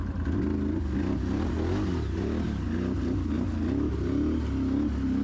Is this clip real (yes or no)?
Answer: yes